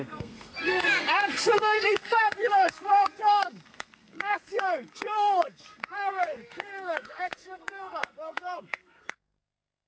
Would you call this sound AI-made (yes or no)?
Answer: yes